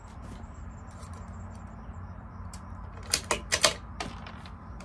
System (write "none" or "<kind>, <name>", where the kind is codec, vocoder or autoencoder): none